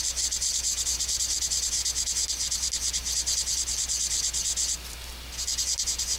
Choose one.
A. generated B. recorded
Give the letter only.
B